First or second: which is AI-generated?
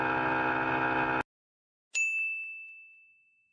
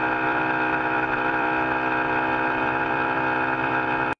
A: second